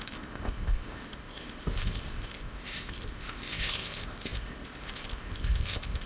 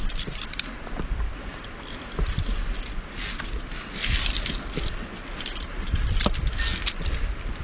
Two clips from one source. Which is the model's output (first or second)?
first